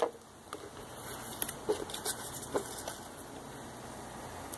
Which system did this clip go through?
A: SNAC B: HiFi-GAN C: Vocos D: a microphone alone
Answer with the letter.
D